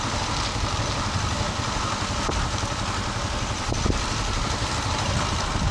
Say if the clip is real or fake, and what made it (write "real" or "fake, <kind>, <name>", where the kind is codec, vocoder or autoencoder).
real